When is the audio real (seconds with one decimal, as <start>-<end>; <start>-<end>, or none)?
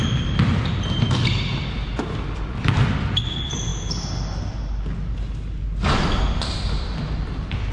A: 0.0-1.5; 3.7-6.3